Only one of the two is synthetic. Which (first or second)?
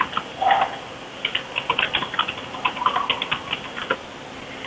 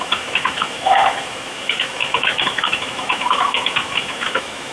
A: second